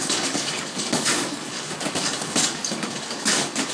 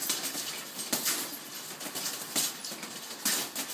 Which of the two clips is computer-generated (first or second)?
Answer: first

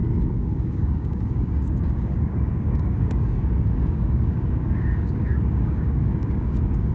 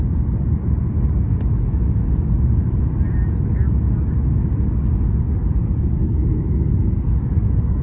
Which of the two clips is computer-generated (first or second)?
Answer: first